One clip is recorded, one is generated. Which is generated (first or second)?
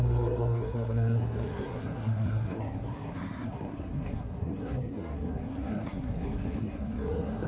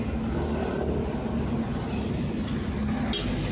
first